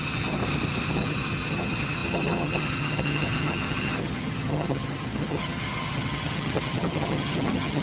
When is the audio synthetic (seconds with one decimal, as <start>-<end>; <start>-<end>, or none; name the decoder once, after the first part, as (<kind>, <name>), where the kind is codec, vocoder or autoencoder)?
0.0-0.4 (vocoder, HiFi-GAN); 0.9-7.8